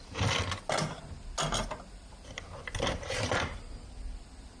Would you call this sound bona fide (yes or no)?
yes